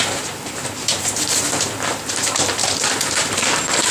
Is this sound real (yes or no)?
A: no